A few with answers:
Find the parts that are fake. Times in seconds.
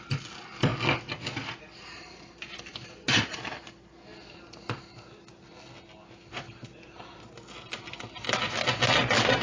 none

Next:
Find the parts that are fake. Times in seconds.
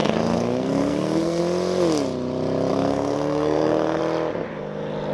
0.0-1.4 (codec, SNAC); 2.7-4.0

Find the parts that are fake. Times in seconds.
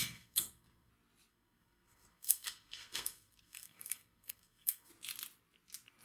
0.0-0.9 (codec, SNAC); 1.3-4.9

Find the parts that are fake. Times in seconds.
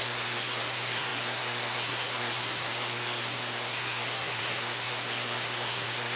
0.0-6.2 (codec, SNAC)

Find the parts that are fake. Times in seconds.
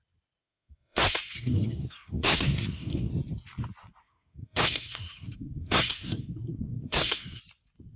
0.4-3.1 (codec, SNAC); 4.0-7.4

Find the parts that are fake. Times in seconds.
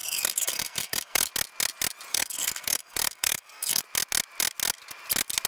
0.0-1.3 (codec, SNAC); 2.1-3.8